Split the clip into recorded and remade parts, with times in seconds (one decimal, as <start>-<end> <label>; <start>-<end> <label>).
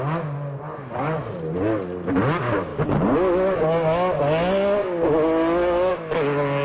0.0-6.6 recorded